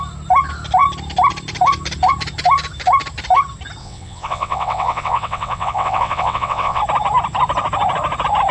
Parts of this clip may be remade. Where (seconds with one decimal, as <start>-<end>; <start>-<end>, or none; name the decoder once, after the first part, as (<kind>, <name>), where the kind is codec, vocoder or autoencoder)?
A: 3.8-6.8 (vocoder, WaveNeXt)